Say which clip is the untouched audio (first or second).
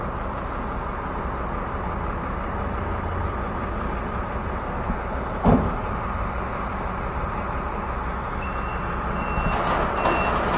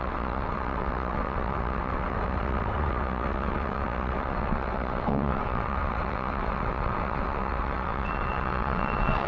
first